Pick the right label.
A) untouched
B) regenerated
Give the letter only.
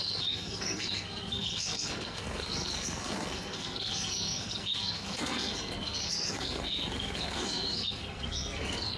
B